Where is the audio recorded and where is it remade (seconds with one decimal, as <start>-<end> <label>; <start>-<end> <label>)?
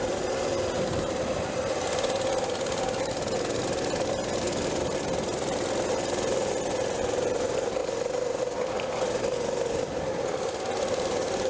0.0-11.5 recorded